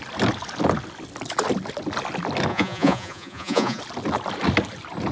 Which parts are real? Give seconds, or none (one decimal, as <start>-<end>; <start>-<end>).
0.0-2.5; 3.8-5.1